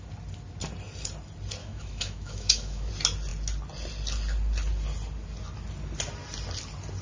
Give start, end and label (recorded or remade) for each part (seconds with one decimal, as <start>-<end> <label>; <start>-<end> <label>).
0.0-1.6 recorded; 1.6-2.9 remade; 2.9-7.0 recorded